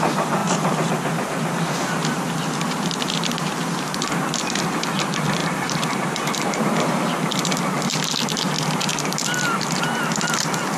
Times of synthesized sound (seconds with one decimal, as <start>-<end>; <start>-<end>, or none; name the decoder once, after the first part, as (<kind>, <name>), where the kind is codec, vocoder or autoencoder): 5.4-6.9 (vocoder, BigVGAN v2)